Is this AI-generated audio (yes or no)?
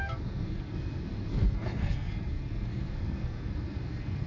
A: yes